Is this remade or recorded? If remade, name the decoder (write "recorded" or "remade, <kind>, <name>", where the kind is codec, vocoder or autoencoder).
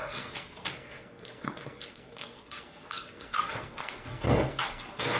remade, codec, SNAC